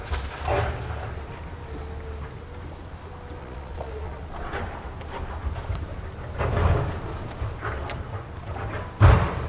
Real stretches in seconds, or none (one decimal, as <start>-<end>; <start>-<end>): 0.0-3.4; 4.2-9.5

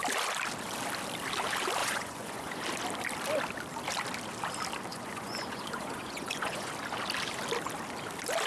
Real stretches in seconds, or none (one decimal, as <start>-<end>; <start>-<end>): 0.0-1.8; 2.6-4.9; 6.7-8.5

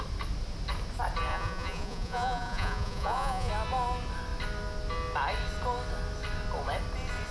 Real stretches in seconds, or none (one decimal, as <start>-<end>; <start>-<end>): 0.0-1.3; 3.5-7.3

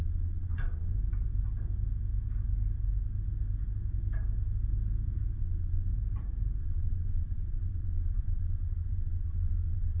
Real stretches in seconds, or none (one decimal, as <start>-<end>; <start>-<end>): 0.9-5.4; 5.9-6.6